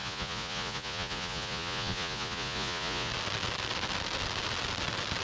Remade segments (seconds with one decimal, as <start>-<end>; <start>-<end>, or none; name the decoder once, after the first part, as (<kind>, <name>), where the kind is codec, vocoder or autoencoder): 0.0-3.1 (vocoder, Vocos)